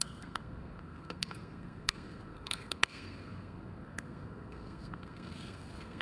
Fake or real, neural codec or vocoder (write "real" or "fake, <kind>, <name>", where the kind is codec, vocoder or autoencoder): fake, codec, SNAC